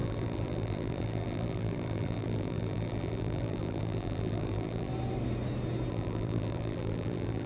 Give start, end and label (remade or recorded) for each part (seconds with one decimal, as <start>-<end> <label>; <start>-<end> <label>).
0.0-4.9 remade; 4.9-5.9 recorded; 5.9-7.5 remade